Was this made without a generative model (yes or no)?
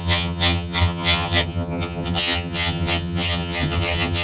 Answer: no